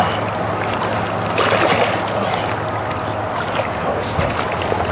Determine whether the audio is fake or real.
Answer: real